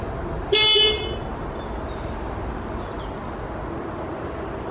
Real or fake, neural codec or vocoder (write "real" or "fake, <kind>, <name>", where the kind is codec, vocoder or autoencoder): real